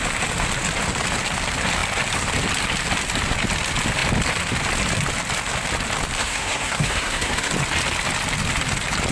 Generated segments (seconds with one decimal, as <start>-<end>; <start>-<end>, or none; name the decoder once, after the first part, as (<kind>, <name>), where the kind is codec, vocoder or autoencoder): 6.2-7.5 (codec, SNAC)